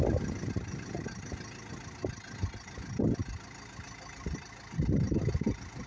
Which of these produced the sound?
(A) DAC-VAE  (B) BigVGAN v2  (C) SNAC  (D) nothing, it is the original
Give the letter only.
D